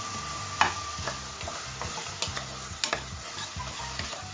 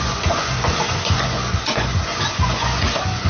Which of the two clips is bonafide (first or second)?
first